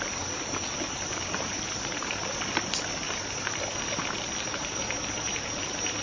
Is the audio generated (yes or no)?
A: no